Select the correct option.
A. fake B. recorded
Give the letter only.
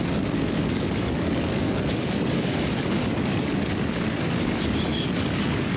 A